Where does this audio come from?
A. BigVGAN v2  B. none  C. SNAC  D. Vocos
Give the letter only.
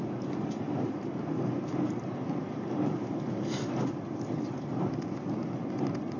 B